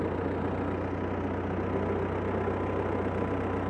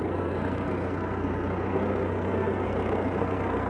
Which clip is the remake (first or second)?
second